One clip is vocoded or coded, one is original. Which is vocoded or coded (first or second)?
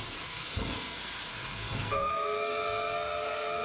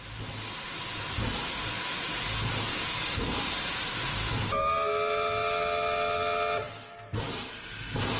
first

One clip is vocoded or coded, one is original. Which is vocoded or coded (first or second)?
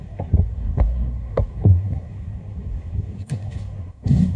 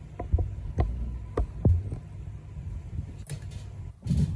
first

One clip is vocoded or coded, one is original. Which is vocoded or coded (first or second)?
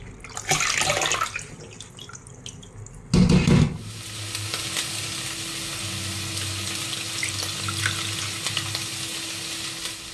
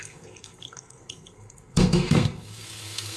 second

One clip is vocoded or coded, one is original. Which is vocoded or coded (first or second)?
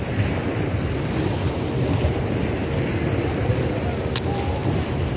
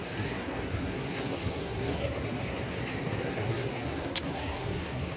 second